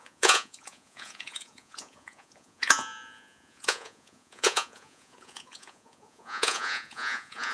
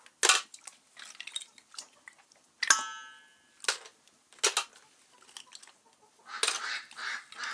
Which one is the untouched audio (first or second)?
second